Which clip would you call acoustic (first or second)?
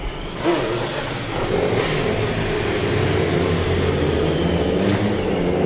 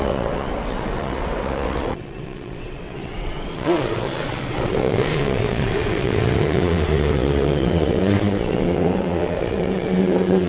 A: first